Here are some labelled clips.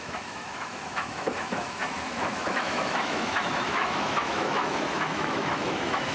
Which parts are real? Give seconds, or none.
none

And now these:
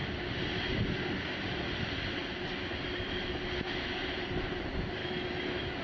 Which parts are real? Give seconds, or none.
0.0-5.0

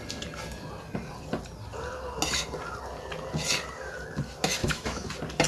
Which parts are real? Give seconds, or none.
0.0-4.6; 5.1-5.5